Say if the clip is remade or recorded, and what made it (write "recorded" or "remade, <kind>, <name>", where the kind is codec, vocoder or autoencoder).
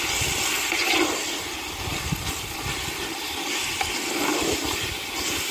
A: recorded